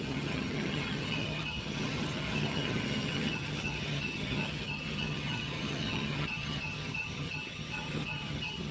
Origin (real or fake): fake